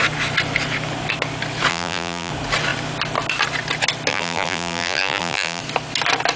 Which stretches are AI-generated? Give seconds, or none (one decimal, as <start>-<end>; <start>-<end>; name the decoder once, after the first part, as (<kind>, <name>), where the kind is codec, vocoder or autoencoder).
1.7-2.3 (vocoder, BigVGAN v2); 4.1-5.6